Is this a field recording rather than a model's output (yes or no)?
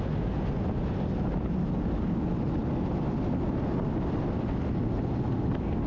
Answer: yes